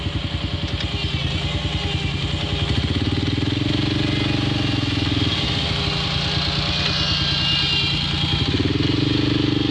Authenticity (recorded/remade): recorded